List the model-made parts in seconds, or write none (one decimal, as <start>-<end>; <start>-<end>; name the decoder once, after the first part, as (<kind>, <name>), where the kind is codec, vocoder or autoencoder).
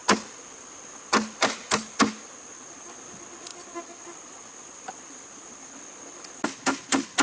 none